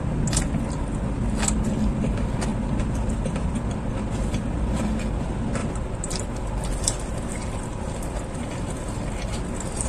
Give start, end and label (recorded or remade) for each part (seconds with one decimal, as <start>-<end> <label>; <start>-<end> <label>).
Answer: 0.0-2.5 recorded; 2.5-3.6 remade; 3.6-5.6 recorded; 5.6-8.4 remade; 8.4-9.9 recorded